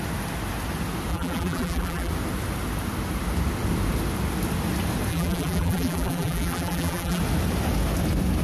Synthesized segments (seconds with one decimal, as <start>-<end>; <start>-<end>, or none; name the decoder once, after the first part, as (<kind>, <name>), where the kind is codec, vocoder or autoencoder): 1.1-2.1 (vocoder, BigVGAN v2); 5.1-7.2